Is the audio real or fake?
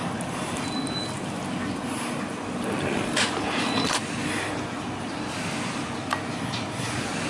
real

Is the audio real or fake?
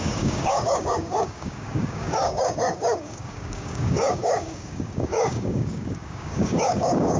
fake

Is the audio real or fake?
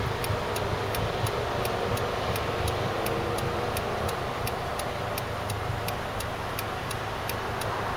real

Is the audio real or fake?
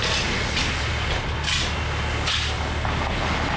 real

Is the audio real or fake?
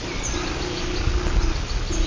real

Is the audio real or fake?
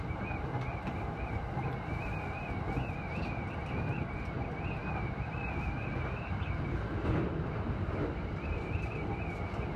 real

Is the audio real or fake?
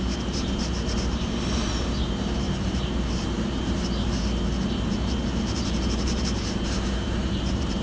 fake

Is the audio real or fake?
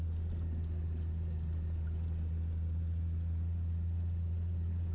real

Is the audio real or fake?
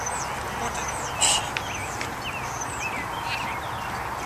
real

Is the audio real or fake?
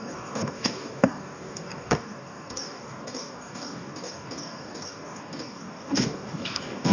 fake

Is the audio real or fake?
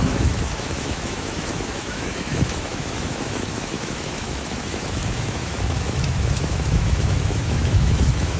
fake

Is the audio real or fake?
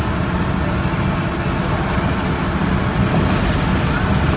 real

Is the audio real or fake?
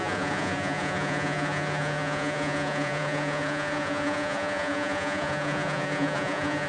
fake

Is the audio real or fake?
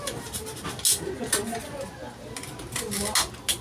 real